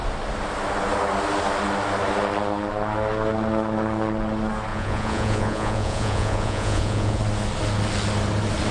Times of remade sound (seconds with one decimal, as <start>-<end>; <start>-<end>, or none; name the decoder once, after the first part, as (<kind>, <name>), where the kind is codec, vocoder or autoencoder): 4.7-7.2 (vocoder, Vocos)